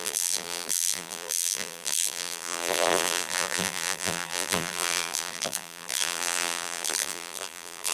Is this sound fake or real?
fake